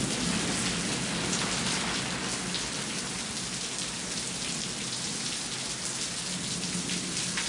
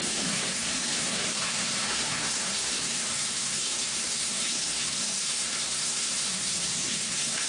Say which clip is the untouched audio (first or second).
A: first